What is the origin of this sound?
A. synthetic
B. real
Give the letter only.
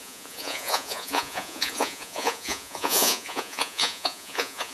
A